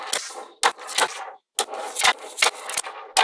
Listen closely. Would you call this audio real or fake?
real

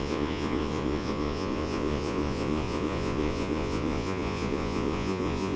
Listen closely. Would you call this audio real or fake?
fake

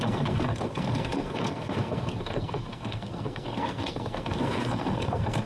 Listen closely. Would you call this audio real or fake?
fake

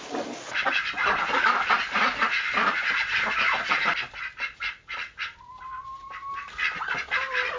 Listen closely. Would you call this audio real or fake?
real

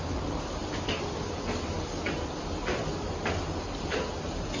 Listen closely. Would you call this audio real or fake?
real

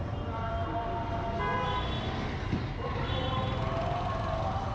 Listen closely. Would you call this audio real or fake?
real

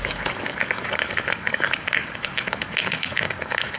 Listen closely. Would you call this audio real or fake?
fake